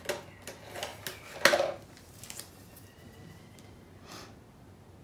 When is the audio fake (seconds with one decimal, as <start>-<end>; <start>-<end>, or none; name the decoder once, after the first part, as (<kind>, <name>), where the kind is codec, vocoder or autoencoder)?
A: none